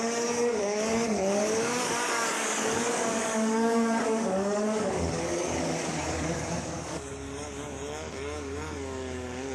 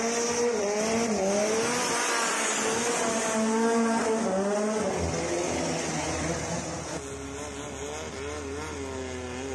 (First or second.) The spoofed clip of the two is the first